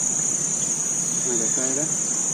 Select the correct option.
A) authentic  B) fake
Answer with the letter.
A